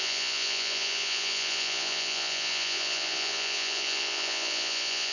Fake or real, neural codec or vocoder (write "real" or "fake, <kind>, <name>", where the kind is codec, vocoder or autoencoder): fake, vocoder, Vocos